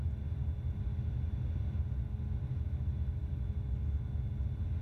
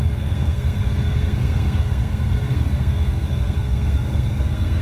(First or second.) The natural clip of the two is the first